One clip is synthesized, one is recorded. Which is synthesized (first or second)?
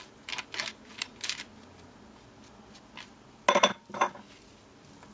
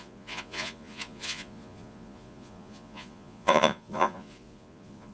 second